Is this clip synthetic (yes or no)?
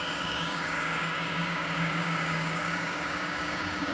yes